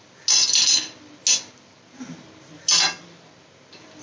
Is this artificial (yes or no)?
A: no